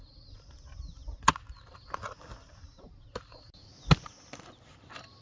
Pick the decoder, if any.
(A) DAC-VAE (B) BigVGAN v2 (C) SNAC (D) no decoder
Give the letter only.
D